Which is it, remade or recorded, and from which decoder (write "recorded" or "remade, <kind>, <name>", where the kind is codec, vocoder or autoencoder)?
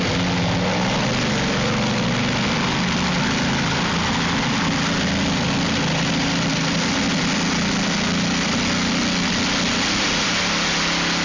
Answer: recorded